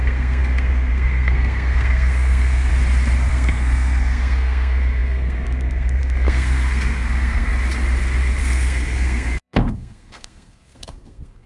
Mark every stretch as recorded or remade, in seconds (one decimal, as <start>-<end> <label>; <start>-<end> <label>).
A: 0.0-2.7 remade; 2.7-3.3 recorded; 3.3-7.5 remade; 7.5-8.4 recorded; 8.4-11.5 remade